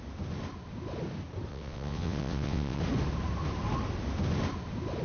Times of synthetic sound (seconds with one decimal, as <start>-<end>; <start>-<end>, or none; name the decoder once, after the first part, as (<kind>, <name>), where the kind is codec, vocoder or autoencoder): 1.5-2.8 (vocoder, WaveNeXt)